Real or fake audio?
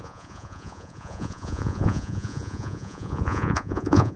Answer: fake